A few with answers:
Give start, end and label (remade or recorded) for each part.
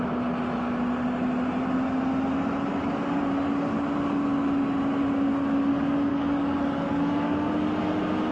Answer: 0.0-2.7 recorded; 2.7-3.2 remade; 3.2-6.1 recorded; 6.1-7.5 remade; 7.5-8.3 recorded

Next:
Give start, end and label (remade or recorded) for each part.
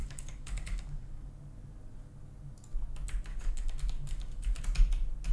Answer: 0.0-1.3 remade; 1.3-3.3 recorded; 3.3-4.6 remade; 4.6-5.3 recorded